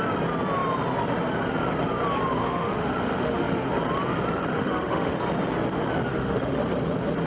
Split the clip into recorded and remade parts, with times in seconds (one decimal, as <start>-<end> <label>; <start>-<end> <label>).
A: 0.0-2.4 recorded; 2.4-3.7 remade; 3.7-4.5 recorded; 4.5-5.2 remade; 5.2-6.1 recorded; 6.1-6.6 remade; 6.6-7.3 recorded